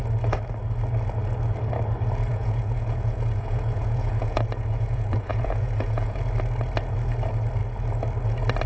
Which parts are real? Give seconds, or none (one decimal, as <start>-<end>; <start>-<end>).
0.0-2.3; 6.2-8.7